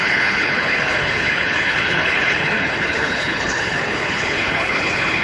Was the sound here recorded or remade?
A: remade